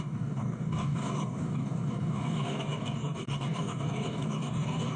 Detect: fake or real fake